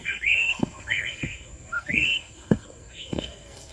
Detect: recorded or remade remade